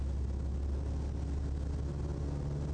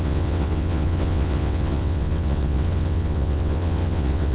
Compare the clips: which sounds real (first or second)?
first